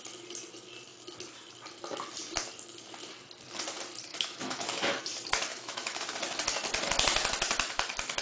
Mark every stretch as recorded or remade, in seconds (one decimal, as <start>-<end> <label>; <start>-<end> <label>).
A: 0.0-4.1 recorded; 4.1-5.0 remade; 5.0-5.5 recorded; 5.5-6.1 remade; 6.1-8.2 recorded